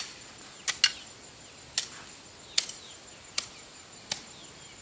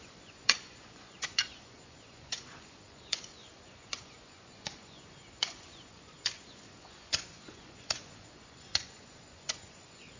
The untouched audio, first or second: first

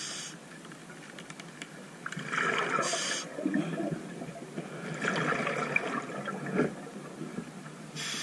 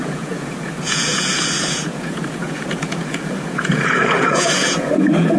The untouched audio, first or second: first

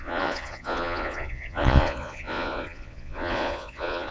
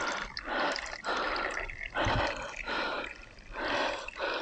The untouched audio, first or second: second